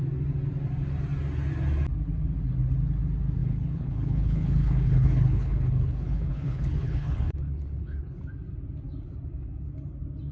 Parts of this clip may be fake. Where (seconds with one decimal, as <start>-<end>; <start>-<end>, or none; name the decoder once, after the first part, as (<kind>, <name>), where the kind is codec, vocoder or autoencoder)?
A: 3.4-8.2 (codec, HILCodec)